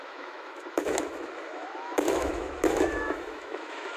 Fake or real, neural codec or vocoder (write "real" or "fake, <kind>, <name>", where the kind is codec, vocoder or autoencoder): fake, autoencoder, DAC-VAE